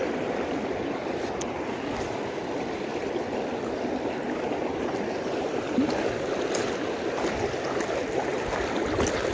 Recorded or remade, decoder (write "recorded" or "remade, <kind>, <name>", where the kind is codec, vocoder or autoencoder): recorded